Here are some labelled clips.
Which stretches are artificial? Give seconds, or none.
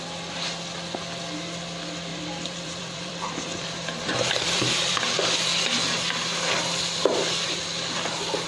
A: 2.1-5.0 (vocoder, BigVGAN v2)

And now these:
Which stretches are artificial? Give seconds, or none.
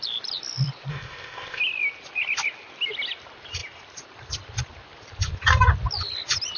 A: 0.9-1.6 (codec, ZipCodec)